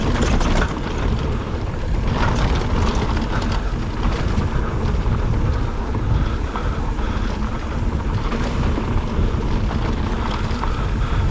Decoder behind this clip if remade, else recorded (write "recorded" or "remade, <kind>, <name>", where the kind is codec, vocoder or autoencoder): recorded